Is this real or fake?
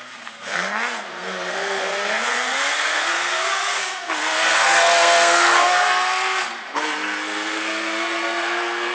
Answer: fake